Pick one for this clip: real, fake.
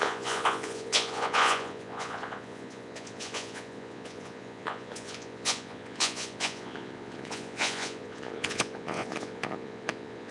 fake